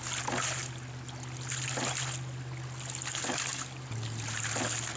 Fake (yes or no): no